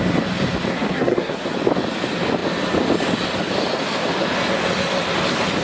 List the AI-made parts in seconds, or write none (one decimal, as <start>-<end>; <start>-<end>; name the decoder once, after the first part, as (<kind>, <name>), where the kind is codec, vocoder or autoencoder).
0.7-1.5 (codec, SNAC)